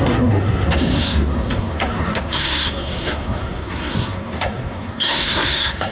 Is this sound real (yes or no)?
no